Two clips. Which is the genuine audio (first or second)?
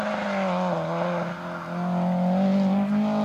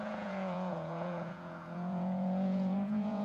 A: first